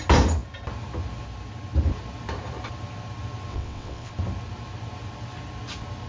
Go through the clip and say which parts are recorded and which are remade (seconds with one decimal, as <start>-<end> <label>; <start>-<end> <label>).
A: 0.0-3.5 recorded; 3.5-4.1 remade; 4.1-6.1 recorded